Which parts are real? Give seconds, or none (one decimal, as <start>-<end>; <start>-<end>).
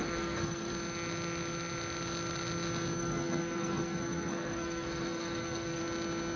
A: 0.7-3.0; 5.8-6.4